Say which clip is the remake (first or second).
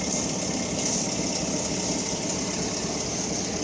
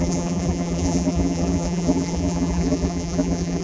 second